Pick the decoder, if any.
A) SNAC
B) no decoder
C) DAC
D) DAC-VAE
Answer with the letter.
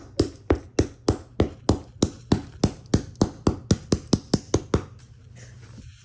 B